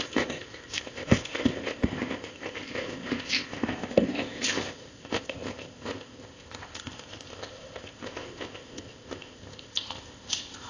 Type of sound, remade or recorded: remade